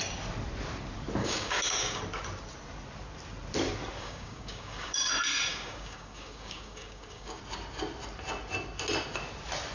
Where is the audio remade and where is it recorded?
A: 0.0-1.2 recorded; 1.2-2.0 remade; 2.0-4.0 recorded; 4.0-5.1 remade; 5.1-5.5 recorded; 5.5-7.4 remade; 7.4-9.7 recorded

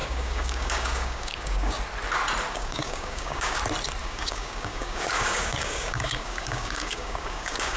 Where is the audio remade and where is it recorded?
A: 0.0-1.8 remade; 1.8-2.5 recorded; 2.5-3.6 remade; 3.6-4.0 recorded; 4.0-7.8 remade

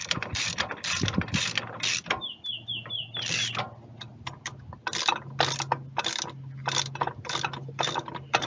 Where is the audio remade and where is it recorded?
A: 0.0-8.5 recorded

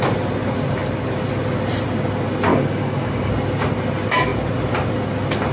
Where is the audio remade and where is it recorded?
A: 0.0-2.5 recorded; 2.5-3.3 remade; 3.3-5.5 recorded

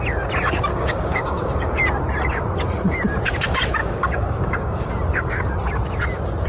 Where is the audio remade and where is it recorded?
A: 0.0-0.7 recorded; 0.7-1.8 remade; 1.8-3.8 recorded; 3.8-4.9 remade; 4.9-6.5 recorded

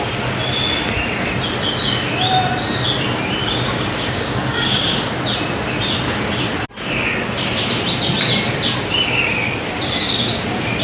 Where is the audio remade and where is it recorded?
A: 0.0-3.4 recorded; 3.4-5.1 remade; 5.1-10.8 recorded